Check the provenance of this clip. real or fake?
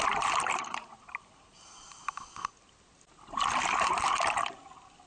real